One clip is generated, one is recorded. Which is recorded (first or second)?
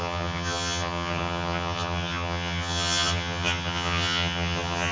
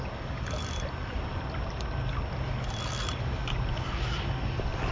second